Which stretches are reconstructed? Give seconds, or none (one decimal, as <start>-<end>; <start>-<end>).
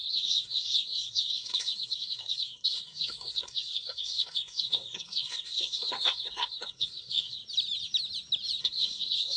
0.0-7.4; 8.6-9.4